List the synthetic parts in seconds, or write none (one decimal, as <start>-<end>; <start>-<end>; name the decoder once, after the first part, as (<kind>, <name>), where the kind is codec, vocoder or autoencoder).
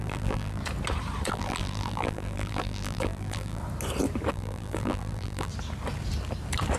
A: 0.0-0.6 (vocoder, BigVGAN v2); 1.3-3.6; 4.3-5.5